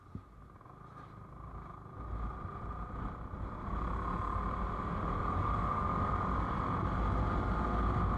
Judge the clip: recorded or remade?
recorded